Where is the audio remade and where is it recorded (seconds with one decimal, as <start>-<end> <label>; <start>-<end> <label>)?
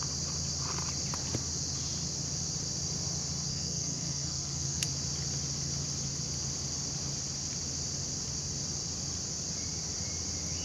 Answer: 0.0-3.5 recorded; 3.5-4.9 remade; 4.9-10.6 recorded